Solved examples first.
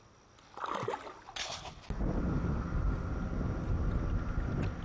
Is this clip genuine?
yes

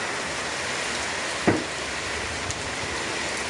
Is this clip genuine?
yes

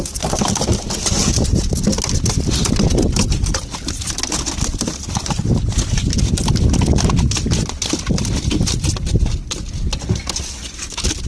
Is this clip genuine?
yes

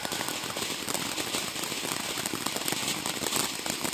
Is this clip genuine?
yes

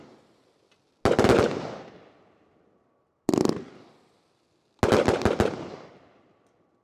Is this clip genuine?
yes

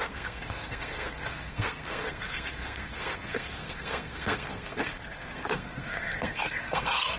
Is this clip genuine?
no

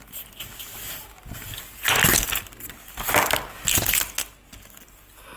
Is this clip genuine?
yes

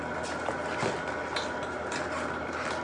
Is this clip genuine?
yes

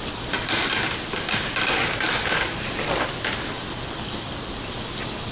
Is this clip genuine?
yes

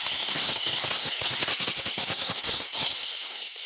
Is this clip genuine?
no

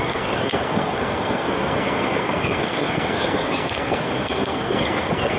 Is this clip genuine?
no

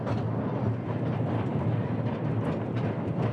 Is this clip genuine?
yes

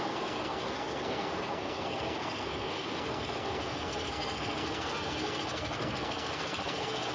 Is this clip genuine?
no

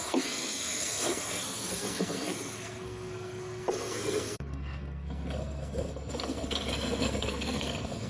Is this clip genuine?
no